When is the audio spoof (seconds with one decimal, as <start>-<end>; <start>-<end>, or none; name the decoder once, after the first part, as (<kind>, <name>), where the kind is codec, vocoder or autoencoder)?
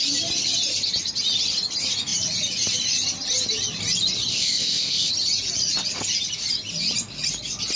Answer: 4.3-5.1 (codec, ZipCodec)